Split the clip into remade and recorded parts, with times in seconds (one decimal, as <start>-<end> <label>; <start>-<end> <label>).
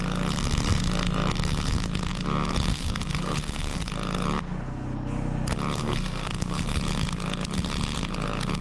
0.0-2.7 recorded; 2.7-3.9 remade; 3.9-5.8 recorded; 5.8-6.8 remade; 6.8-8.6 recorded